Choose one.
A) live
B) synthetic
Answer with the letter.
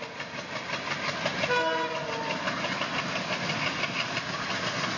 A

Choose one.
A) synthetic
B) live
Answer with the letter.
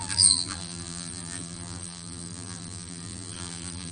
A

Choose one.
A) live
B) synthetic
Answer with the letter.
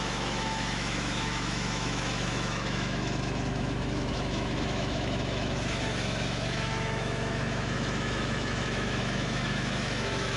B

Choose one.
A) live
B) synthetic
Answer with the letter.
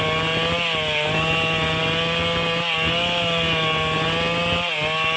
A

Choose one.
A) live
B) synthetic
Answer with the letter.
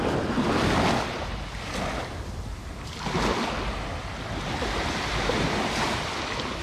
A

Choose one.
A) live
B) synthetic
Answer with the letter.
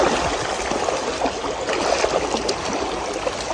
A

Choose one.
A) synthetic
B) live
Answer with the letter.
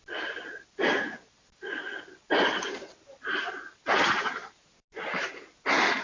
B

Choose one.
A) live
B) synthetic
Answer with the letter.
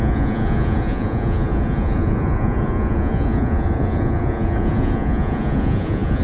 B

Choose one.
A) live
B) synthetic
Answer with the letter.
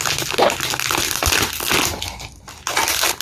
A